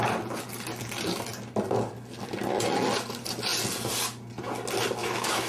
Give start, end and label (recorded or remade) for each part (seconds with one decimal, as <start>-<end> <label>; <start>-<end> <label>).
0.0-5.0 recorded; 5.0-5.5 remade